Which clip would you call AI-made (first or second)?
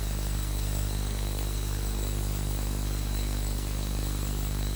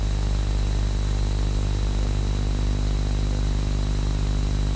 first